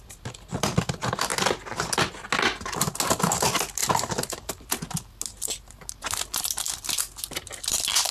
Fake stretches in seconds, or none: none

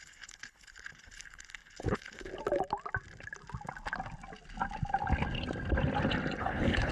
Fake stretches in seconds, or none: 0.0-2.3 (codec, HILCodec); 6.4-6.9

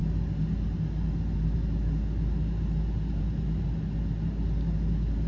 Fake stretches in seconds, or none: none

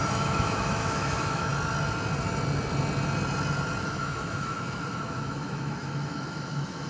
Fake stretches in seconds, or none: 0.0-1.5 (autoencoder, DAC-VAE); 3.8-6.9

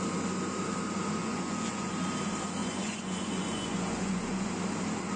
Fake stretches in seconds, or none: 1.2-1.9 (vocoder, Vocos); 2.6-4.5

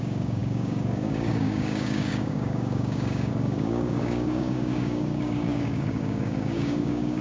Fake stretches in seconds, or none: 0.0-7.2 (codec, DAC)